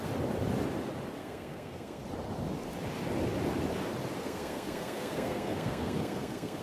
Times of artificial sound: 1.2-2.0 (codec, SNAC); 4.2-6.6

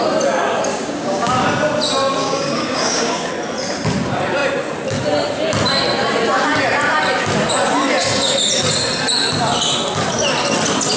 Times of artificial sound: 0.7-1.3 (codec, DAC); 2.2-3.3

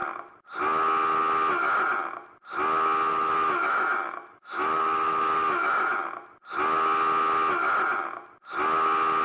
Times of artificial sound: 3.1-5.9 (autoencoder, DAC-VAE)

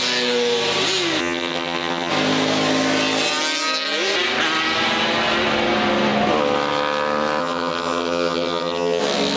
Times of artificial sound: 1.2-2.1 (vocoder, HiFi-GAN); 7.4-9.0

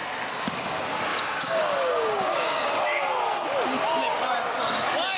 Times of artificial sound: 1.1-3.0 (codec, DAC)

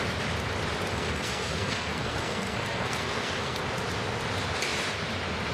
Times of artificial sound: 0.9-3.6 (codec, SNAC)